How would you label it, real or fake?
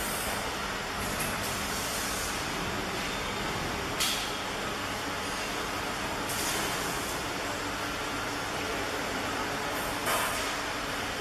real